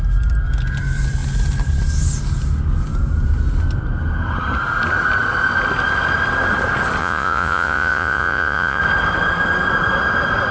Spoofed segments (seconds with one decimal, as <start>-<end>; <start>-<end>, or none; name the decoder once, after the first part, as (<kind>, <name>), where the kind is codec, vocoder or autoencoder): 7.0-8.8 (vocoder, Vocos)